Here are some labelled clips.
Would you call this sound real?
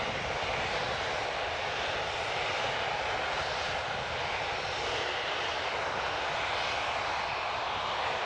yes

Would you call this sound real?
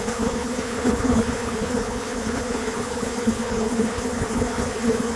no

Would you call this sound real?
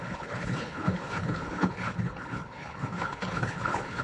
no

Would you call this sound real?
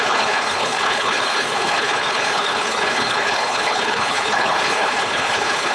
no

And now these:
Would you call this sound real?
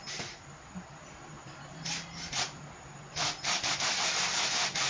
yes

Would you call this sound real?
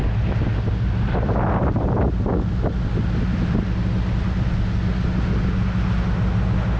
yes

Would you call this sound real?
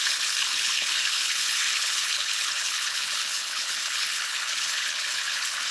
no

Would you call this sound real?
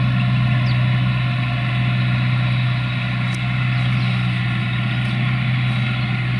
yes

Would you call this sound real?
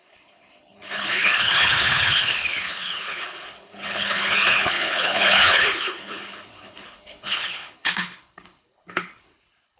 no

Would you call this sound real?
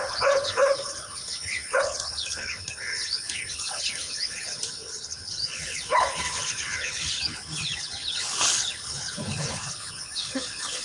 no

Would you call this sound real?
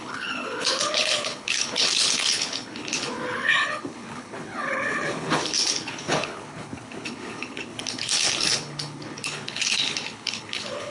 no